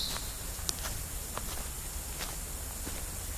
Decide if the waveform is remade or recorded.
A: recorded